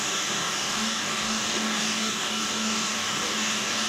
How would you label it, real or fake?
fake